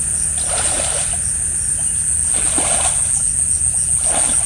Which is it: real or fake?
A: real